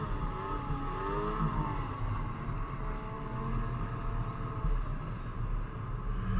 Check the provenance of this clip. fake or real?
real